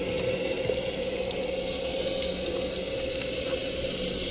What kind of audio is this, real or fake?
real